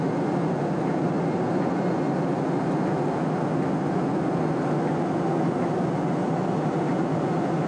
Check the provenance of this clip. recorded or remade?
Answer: recorded